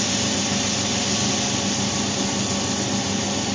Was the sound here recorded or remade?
recorded